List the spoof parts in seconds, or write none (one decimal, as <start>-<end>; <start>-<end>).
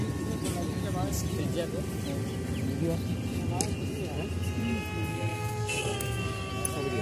5.1-6.5